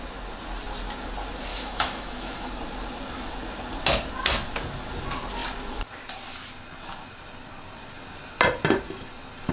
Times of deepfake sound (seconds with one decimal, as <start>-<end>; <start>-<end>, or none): 1.5-2.5